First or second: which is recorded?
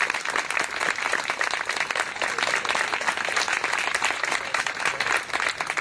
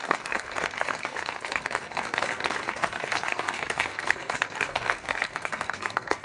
first